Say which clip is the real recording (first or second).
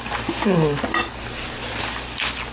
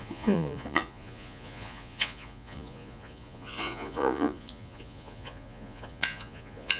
first